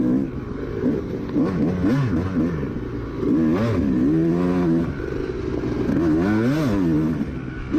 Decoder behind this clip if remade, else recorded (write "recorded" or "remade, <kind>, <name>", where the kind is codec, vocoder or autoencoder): recorded